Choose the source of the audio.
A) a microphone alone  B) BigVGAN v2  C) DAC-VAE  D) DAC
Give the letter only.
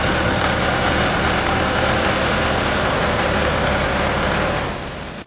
B